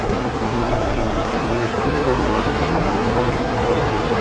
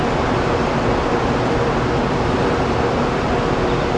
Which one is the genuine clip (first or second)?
second